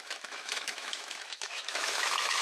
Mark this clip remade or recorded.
remade